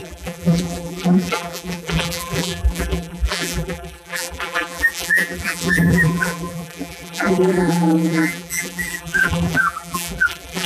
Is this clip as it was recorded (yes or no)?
no